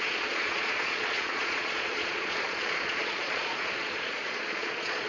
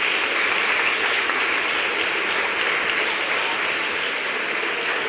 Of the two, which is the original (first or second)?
second